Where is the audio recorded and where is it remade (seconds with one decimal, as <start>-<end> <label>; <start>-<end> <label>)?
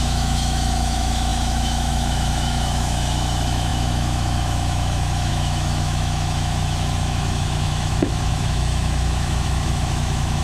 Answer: 0.0-10.4 remade